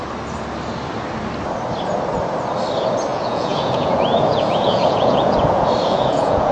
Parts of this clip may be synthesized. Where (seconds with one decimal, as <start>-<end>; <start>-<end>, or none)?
3.1-6.5